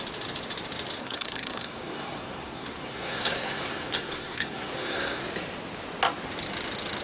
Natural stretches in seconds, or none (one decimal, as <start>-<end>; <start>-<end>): 0.0-1.0; 5.2-7.0